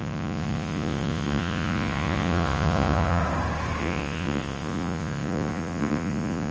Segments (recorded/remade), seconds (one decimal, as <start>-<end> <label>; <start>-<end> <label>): 0.0-3.2 remade; 3.2-3.8 recorded; 3.8-6.5 remade